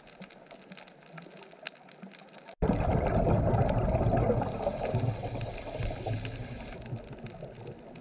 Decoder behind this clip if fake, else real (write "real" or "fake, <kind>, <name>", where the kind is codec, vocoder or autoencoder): real